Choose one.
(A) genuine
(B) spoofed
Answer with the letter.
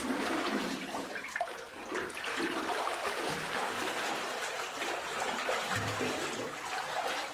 A